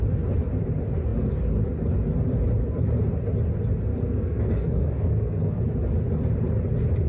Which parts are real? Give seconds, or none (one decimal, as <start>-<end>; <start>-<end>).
0.0-3.9; 5.6-7.1